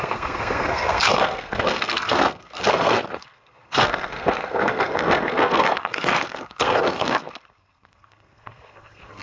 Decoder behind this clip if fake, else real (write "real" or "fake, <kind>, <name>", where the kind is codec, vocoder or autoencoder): fake, codec, SNAC